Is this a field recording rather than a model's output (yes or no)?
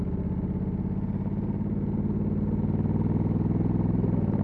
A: yes